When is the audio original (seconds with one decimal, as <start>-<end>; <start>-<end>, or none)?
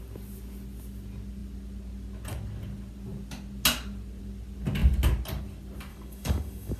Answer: 0.0-5.9